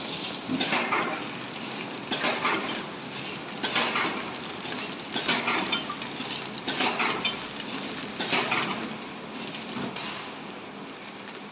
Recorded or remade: recorded